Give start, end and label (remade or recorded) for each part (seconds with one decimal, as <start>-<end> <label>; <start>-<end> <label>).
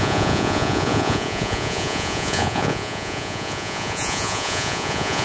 0.0-5.2 remade